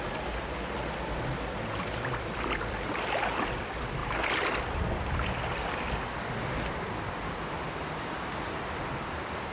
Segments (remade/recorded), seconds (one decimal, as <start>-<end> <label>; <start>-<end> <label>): 0.0-9.5 remade